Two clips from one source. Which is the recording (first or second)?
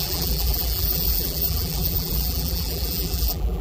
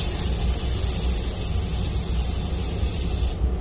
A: second